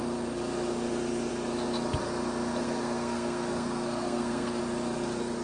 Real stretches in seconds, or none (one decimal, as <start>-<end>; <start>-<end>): 0.0-2.6; 4.6-5.4